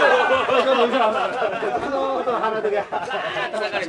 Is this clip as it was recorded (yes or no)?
yes